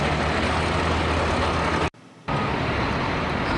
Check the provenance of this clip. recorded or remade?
recorded